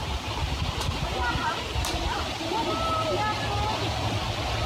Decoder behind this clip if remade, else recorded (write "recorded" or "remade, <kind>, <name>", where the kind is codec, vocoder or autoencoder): recorded